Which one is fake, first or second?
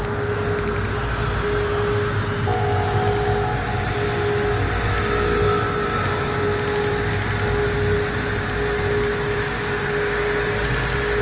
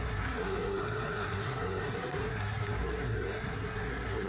second